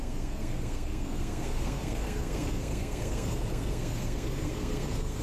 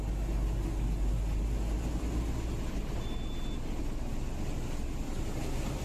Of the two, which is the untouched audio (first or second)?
second